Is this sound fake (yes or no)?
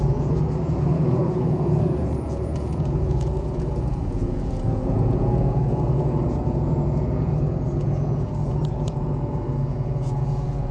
yes